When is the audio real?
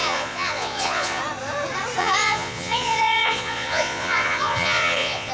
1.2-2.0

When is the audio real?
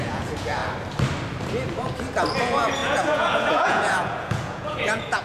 0.6-2.4